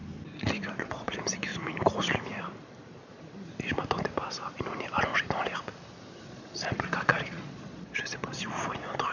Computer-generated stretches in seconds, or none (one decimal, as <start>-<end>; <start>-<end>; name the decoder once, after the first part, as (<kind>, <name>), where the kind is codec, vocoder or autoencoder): 0.7-1.5 (vocoder, Vocos); 6.2-9.1